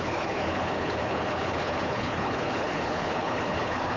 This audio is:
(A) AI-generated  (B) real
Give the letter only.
A